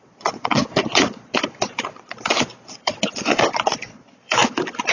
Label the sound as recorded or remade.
remade